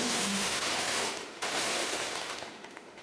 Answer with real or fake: fake